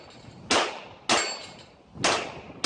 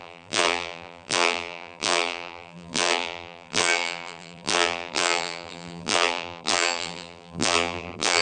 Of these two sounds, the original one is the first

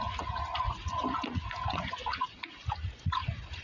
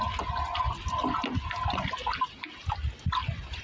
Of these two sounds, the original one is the second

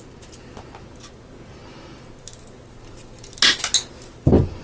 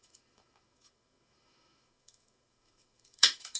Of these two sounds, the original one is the first